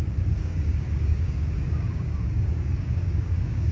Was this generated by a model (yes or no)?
yes